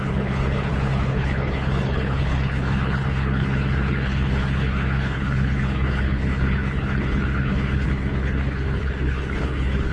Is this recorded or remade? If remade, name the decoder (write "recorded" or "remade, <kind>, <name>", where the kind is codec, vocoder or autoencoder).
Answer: remade, codec, HILCodec